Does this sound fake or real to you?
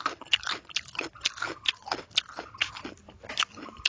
real